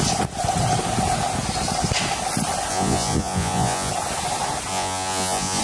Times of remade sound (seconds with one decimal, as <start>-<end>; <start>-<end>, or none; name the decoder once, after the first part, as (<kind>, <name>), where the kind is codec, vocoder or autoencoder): 2.7-3.9 (vocoder, Vocos); 4.7-5.6